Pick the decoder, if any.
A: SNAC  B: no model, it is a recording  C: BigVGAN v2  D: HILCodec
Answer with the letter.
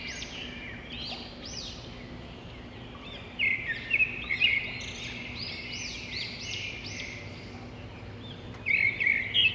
C